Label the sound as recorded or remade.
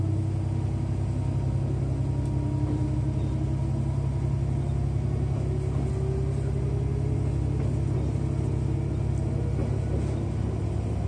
recorded